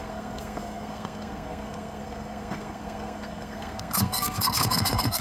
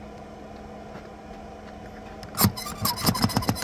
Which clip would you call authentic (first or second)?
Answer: second